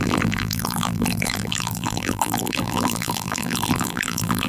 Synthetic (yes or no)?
yes